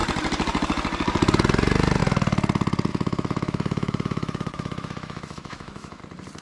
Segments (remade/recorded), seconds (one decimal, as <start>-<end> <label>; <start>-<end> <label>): 0.0-2.9 recorded; 2.9-6.0 remade; 6.0-6.4 recorded